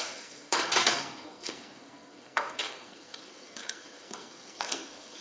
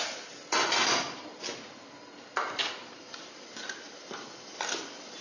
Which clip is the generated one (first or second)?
first